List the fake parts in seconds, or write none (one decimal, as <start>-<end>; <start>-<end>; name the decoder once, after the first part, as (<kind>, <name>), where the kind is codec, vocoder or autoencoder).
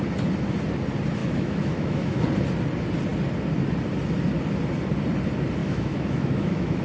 1.2-2.2 (autoencoder, DAC-VAE); 5.6-6.8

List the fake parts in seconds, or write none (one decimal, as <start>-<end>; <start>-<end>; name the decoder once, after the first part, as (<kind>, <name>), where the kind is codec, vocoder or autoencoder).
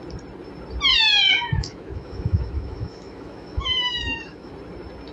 1.4-4.5 (autoencoder, DAC-VAE)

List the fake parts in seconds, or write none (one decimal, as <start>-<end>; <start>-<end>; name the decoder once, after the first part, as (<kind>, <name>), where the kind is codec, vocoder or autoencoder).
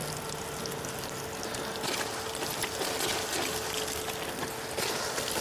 none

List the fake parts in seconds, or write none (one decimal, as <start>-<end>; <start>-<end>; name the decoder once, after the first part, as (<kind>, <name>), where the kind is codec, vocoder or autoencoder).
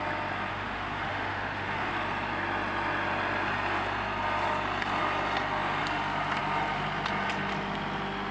0.5-1.9 (autoencoder, DAC-VAE)